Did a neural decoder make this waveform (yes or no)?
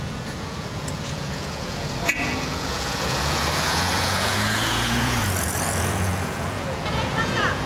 yes